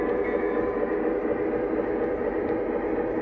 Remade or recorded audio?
recorded